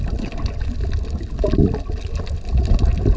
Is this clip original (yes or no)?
yes